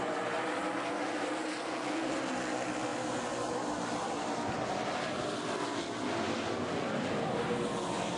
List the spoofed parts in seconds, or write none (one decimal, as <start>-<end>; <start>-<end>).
none